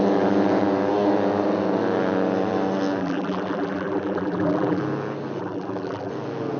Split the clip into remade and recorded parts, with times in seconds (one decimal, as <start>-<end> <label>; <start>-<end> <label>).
0.0-3.0 recorded; 3.0-4.8 remade; 4.8-5.4 recorded; 5.4-6.1 remade; 6.1-6.6 recorded